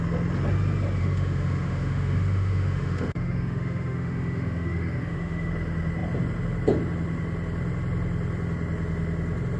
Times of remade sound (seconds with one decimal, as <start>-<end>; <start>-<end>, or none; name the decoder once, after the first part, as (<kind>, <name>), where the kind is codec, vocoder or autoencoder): 1.0-5.5 (autoencoder, DAC-VAE)